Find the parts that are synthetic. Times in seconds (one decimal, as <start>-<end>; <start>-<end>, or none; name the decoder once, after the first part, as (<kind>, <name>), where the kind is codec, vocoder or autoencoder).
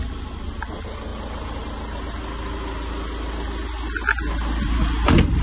none